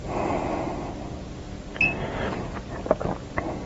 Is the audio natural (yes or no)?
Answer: yes